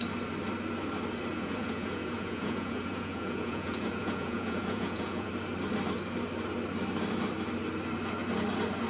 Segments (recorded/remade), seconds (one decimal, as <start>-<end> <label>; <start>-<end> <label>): 0.0-1.3 recorded; 1.3-5.3 remade; 5.3-8.9 recorded